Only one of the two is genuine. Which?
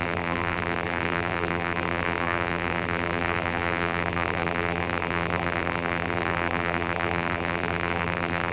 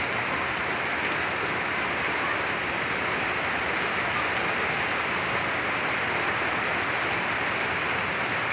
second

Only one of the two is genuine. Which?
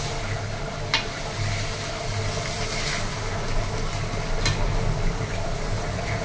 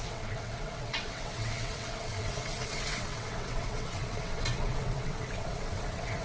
first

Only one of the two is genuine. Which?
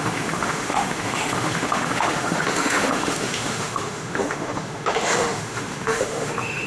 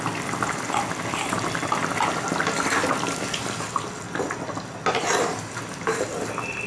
second